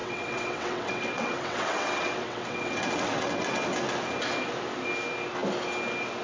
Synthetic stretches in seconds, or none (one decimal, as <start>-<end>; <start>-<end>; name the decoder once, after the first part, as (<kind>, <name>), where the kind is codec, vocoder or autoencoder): 0.0-3.6 (vocoder, WaveNeXt)